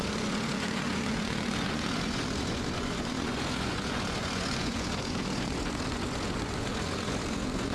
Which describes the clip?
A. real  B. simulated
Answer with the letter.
B